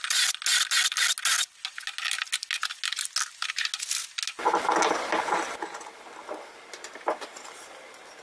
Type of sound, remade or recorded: recorded